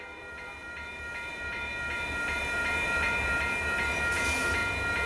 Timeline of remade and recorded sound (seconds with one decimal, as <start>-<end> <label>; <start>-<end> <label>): 0.0-4.6 remade; 4.6-5.1 recorded